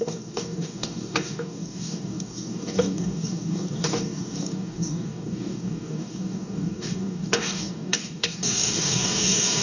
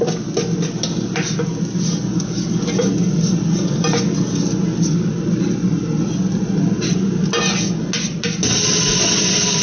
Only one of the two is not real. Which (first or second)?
first